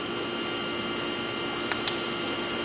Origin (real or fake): real